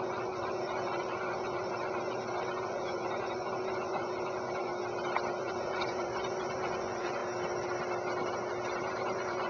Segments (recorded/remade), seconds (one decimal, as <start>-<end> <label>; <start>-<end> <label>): 0.0-4.7 remade; 4.7-5.4 recorded; 5.4-7.2 remade; 7.2-8.8 recorded; 8.8-9.5 remade